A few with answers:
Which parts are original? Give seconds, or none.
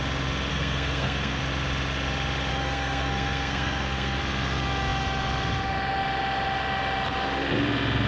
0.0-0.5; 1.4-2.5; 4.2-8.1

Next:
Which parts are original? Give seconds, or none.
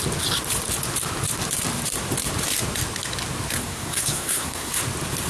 0.0-3.6; 4.8-5.3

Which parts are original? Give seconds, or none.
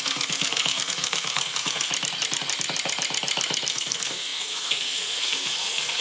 1.9-3.7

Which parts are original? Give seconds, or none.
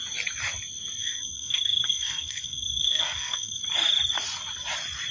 0.0-1.0; 3.6-5.1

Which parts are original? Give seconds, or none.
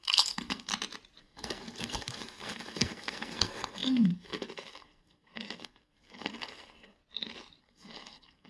0.7-1.2; 7.0-7.6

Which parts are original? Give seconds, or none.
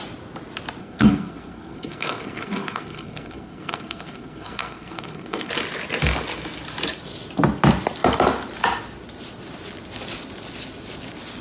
0.0-0.8; 5.5-11.4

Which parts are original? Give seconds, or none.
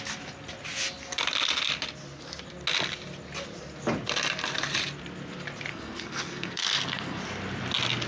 0.0-5.7; 7.2-8.1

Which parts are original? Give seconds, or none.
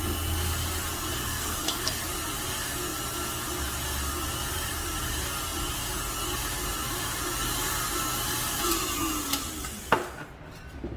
0.0-1.2; 2.0-11.0